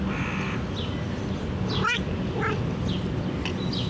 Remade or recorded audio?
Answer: recorded